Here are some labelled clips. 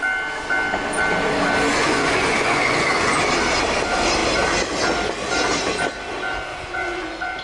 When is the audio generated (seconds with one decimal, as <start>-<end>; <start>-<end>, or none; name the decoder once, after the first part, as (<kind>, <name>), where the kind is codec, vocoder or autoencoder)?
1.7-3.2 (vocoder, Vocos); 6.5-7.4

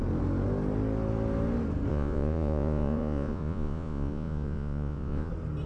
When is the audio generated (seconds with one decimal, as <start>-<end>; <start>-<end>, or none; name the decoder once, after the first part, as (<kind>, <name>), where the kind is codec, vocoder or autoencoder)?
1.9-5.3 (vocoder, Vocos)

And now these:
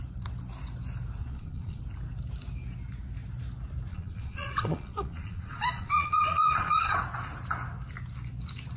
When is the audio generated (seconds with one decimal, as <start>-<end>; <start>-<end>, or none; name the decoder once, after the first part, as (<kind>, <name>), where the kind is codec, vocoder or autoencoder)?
1.2-1.8 (vocoder, Vocos); 3.9-7.0

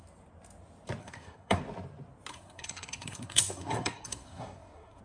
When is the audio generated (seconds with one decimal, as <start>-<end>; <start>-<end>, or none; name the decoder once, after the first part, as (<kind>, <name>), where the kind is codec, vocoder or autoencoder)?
1.0-1.6 (codec, SNAC); 2.3-5.0

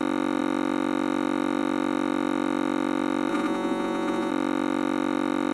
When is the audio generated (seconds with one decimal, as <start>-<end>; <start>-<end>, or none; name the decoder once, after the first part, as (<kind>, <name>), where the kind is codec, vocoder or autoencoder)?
3.3-4.3 (vocoder, Vocos)

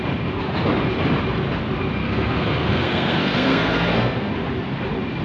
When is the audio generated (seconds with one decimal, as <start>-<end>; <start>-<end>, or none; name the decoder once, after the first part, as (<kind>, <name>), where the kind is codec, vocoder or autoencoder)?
2.0-4.3 (codec, SNAC)